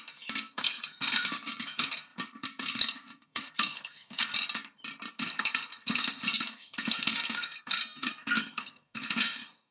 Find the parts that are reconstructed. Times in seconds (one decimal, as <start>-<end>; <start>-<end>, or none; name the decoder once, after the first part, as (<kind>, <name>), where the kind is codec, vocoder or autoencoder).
0.0-4.3 (codec, SNAC); 5.1-9.7

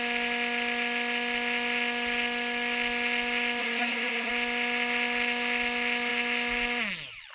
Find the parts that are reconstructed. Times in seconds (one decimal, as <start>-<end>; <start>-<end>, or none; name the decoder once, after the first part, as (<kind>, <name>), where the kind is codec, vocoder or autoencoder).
3.6-4.3 (codec, SNAC)

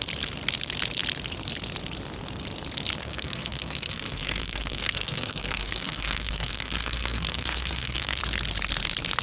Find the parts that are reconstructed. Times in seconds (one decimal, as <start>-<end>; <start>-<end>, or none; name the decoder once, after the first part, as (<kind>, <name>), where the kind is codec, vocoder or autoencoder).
3.0-8.2 (codec, SNAC)

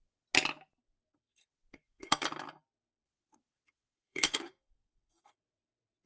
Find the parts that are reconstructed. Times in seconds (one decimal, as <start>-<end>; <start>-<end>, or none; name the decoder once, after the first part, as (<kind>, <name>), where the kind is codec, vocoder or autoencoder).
1.1-2.2 (codec, SNAC); 2.9-5.4

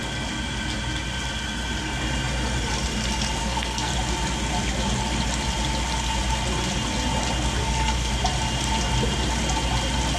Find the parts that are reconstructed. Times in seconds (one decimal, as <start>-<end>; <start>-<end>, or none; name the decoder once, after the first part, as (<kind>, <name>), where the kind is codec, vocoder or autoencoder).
3.4-3.9 (codec, SNAC); 7.6-8.1

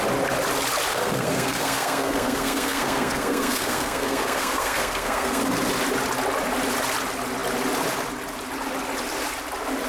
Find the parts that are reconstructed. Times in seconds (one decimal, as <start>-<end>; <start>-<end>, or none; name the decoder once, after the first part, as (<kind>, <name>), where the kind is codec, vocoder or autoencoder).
0.9-5.4 (codec, SNAC)